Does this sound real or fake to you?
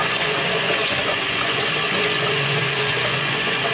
fake